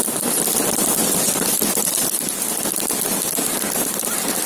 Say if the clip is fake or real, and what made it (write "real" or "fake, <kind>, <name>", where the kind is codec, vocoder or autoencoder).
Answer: real